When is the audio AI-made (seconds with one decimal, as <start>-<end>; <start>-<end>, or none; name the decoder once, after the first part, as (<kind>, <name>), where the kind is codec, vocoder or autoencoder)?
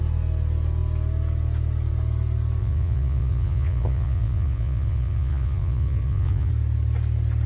2.6-6.5 (vocoder, Vocos)